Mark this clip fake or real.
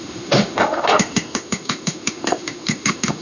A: fake